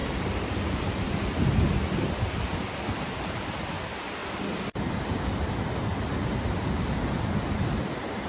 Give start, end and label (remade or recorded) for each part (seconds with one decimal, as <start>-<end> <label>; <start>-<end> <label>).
0.0-0.8 remade; 0.8-8.3 recorded